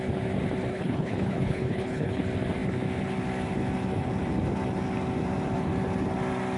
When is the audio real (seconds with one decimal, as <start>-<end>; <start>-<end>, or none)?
0.0-0.7; 2.2-6.6